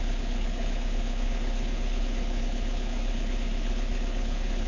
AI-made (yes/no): yes